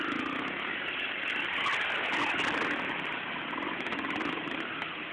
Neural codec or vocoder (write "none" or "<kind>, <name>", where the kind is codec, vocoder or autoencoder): none